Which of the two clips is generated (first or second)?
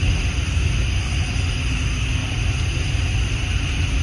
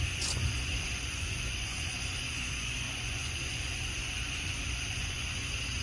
second